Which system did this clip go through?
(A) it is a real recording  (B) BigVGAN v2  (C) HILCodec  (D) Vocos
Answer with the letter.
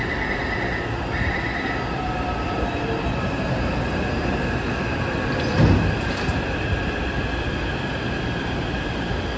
A